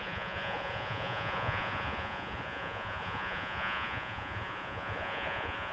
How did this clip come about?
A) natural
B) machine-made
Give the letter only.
B